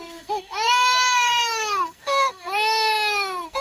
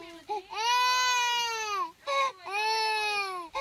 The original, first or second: second